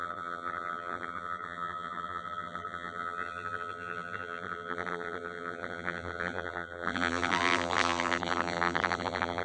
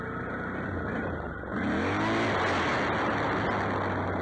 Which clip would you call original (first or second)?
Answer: second